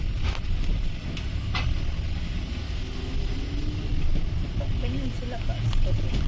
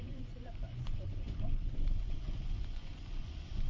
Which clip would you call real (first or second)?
first